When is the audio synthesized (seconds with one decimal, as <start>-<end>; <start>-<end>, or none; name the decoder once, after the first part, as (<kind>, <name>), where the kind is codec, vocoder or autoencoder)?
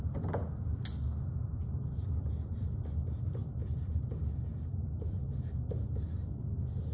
none